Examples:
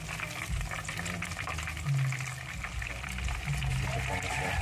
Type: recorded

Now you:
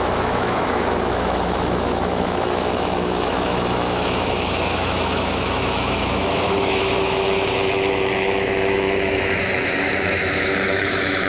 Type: remade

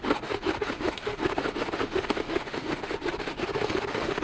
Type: remade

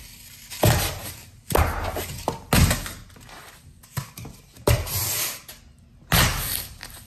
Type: recorded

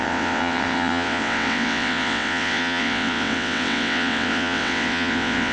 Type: remade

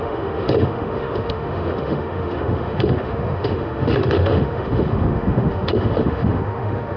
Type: remade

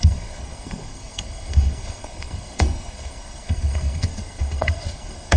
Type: remade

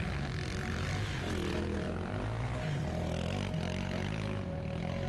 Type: recorded